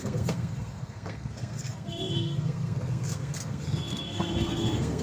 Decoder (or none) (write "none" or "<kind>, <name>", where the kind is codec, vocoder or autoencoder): codec, SNAC